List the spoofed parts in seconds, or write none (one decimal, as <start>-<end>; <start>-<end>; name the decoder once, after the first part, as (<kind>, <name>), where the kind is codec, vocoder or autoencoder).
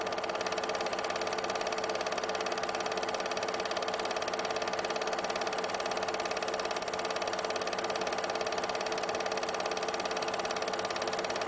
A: none